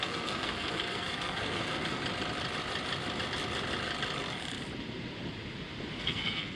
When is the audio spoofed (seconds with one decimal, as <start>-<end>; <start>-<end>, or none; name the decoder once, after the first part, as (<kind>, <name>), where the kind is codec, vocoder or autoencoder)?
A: 0.0-2.0 (codec, SNAC); 6.0-6.6